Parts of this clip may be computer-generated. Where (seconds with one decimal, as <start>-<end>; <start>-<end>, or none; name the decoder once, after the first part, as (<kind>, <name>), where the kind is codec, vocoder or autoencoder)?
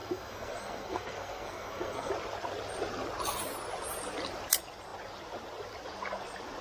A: 0.0-2.1 (codec, SNAC)